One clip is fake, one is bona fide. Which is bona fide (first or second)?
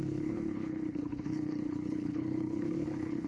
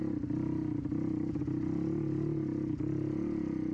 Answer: second